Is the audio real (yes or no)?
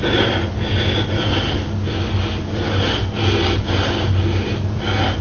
yes